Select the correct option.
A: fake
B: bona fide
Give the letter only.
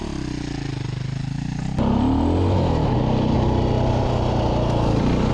B